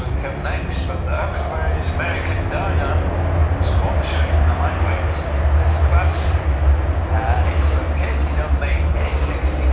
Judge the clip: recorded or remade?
recorded